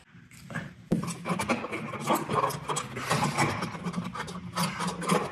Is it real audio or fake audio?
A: real